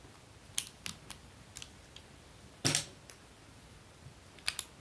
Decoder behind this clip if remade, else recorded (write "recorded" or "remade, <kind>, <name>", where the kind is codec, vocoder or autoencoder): recorded